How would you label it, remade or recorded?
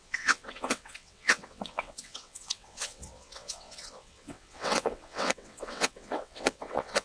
remade